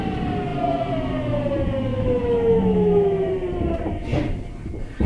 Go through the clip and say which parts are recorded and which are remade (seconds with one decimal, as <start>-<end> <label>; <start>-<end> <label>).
0.0-1.9 recorded; 1.9-3.3 remade; 3.3-5.1 recorded